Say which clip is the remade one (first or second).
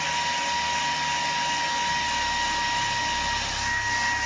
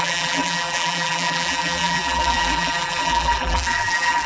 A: second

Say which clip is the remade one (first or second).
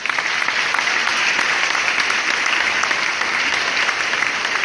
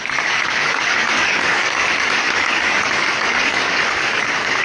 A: second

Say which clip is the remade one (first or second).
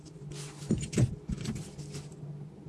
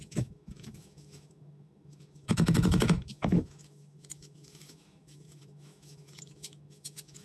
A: second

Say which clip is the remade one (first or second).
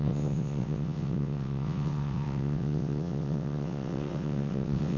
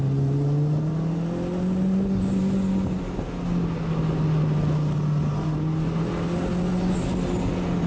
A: first